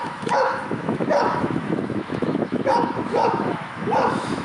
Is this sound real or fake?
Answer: fake